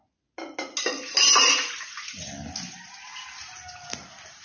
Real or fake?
real